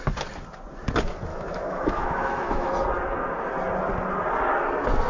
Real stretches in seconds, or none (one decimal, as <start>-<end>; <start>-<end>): 0.0-1.3; 2.7-5.1